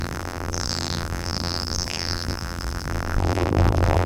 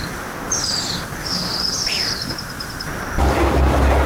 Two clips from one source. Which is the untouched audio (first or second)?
second